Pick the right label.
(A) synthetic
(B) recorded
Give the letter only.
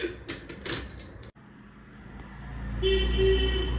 B